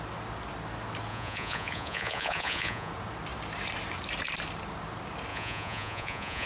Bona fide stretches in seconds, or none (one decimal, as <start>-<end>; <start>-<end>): 0.0-1.1; 2.9-5.3